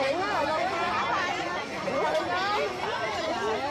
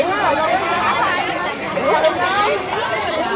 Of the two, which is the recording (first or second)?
first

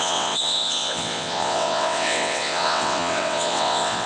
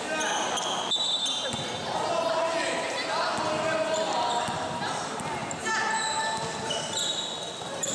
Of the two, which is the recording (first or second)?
second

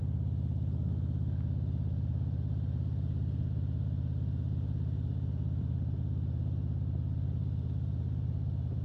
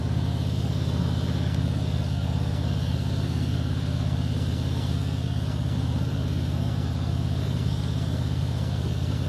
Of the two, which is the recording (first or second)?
first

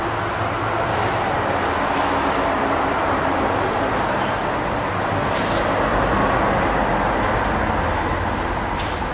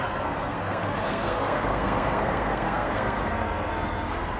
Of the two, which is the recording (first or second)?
first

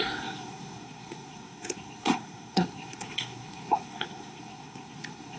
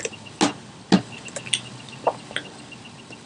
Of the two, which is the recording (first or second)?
second